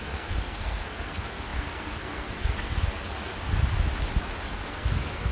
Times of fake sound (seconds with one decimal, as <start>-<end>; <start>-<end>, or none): 0.0-3.3; 4.5-5.3